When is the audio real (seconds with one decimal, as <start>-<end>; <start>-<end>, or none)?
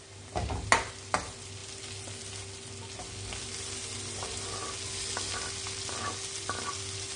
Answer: 0.0-7.2